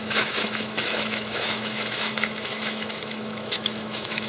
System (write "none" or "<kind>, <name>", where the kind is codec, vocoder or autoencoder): autoencoder, DAC-VAE